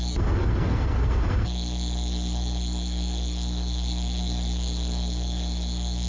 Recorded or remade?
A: remade